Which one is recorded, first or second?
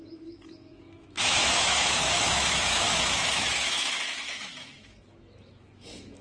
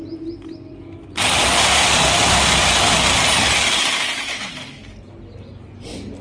second